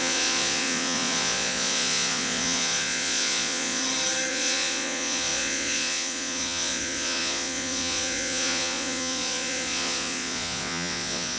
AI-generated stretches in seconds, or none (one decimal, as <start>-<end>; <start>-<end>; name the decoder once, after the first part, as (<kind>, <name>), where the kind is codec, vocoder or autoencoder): 0.0-3.8 (vocoder, Vocos); 4.3-11.4